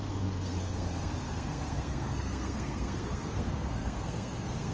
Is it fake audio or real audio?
fake